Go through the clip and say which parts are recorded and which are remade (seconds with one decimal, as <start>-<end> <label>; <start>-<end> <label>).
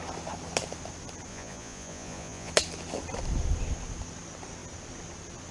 0.0-1.3 recorded; 1.3-2.5 remade; 2.5-5.5 recorded